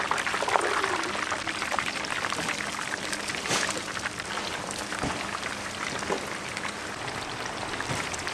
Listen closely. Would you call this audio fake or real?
real